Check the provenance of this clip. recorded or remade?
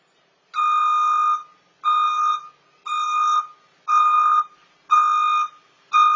recorded